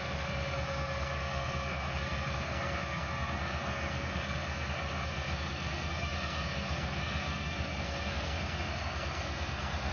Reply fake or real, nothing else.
fake